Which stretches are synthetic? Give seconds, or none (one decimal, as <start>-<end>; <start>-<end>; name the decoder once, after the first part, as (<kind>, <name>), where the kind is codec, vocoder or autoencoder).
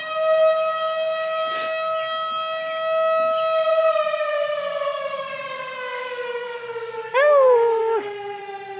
3.7-8.4 (codec, DAC)